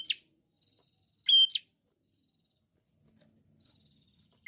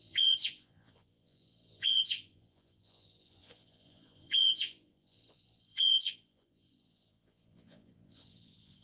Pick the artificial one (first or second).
second